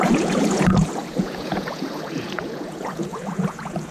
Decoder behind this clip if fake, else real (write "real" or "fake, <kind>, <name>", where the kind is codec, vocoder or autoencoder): fake, vocoder, Vocos